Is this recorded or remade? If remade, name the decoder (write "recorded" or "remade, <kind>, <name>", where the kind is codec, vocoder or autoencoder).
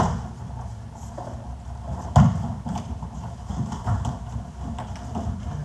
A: recorded